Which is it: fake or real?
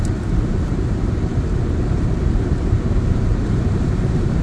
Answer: fake